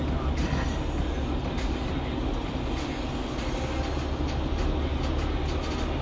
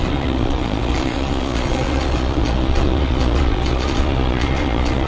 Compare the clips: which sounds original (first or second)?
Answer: first